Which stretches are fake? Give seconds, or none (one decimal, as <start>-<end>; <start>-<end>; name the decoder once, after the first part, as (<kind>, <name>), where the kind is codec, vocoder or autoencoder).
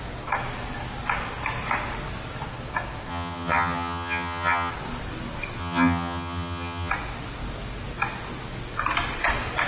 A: 3.1-4.7 (vocoder, HiFi-GAN); 5.6-6.9